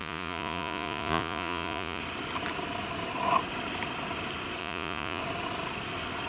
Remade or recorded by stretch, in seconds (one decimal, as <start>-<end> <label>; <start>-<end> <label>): 0.0-2.0 remade; 2.0-4.6 recorded; 4.6-5.2 remade; 5.2-6.3 recorded